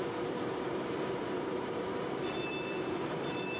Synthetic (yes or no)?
yes